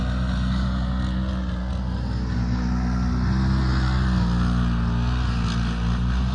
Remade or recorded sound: recorded